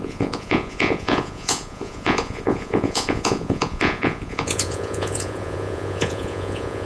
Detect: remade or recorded remade